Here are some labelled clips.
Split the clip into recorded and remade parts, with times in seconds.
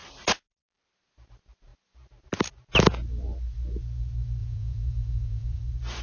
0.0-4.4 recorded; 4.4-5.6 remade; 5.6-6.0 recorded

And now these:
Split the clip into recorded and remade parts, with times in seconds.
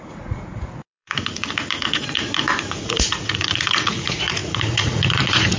0.0-5.6 remade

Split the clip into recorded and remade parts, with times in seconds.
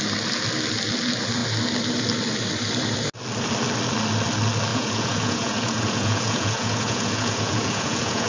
0.0-4.7 recorded; 4.7-8.3 remade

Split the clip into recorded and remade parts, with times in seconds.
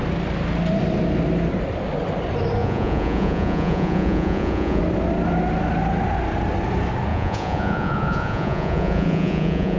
0.0-2.6 recorded; 2.6-4.8 remade; 4.8-7.1 recorded; 7.1-9.8 remade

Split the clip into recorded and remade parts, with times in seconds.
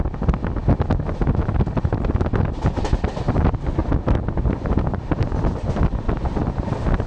0.0-7.1 recorded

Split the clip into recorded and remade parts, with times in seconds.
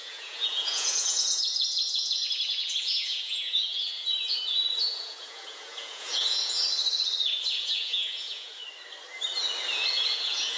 0.0-6.6 remade; 6.6-7.5 recorded; 7.5-8.6 remade; 8.6-9.9 recorded; 9.9-10.6 remade